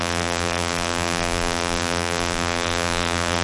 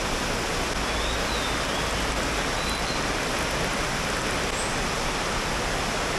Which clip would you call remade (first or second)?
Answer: first